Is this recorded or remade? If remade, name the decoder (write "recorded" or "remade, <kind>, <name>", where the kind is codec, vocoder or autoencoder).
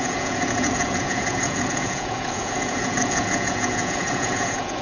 remade, vocoder, Vocos